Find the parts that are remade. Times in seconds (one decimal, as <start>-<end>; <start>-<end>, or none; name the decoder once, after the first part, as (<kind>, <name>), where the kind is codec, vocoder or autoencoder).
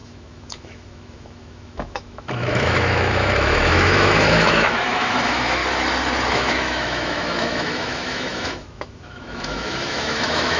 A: 0.0-5.6 (autoencoder, DAC-VAE); 6.3-10.6